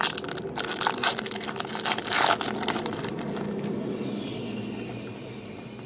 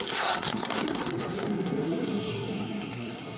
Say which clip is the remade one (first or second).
second